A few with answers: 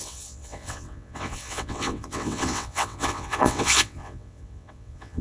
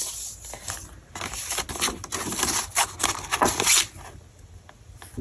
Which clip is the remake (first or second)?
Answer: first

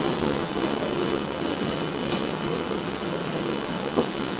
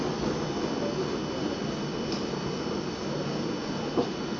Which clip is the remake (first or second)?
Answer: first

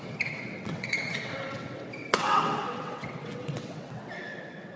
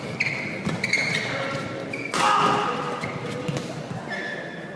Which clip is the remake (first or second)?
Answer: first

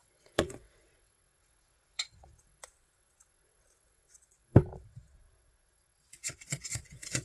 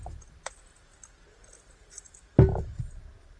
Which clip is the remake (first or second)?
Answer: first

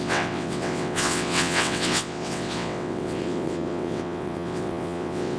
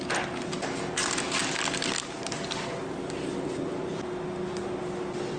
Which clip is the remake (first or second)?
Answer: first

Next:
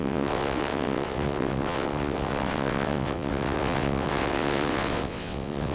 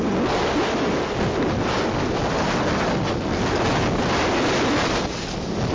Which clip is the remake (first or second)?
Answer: first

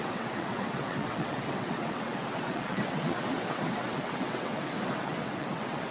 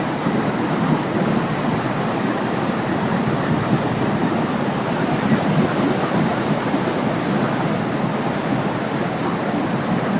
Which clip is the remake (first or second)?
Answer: first